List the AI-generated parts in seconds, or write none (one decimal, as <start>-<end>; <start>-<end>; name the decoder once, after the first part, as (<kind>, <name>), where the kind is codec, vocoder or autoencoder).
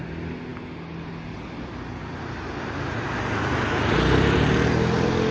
none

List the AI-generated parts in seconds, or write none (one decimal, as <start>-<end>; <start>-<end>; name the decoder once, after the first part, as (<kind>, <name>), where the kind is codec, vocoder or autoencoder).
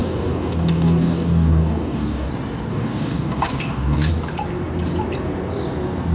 0.0-2.3 (codec, DAC); 2.7-4.1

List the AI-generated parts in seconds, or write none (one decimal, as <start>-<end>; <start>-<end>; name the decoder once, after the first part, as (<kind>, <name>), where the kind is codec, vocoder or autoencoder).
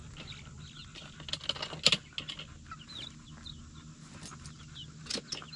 none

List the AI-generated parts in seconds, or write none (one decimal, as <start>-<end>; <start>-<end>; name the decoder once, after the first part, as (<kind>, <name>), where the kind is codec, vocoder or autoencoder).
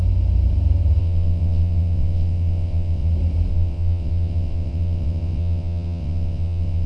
1.0-3.1 (vocoder, WaveNeXt); 3.5-6.9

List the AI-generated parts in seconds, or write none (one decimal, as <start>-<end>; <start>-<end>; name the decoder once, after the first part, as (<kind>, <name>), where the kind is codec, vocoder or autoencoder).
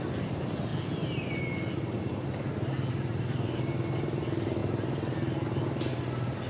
none